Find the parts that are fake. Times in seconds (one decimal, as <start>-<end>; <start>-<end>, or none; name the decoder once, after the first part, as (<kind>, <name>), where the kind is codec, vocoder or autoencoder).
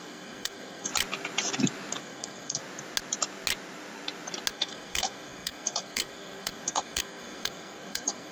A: 0.0-0.9 (codec, SNAC); 2.0-2.6; 4.5-8.3